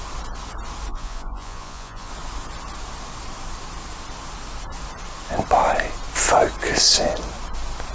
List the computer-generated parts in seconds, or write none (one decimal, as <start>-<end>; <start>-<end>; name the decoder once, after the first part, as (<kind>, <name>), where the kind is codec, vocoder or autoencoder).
0.9-2.1 (vocoder, Vocos)